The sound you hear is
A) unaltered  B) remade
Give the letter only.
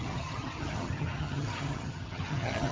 B